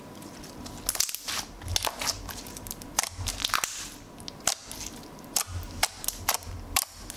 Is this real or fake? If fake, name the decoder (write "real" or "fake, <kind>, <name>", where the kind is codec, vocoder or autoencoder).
real